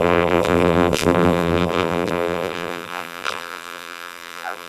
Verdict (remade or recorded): remade